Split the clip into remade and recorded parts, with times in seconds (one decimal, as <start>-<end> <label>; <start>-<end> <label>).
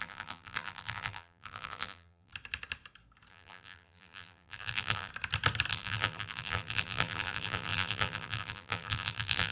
0.0-2.3 remade; 2.3-3.3 recorded; 3.3-5.1 remade; 5.1-5.7 recorded; 5.7-9.5 remade